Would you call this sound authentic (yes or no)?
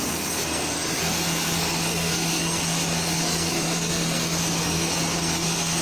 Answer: no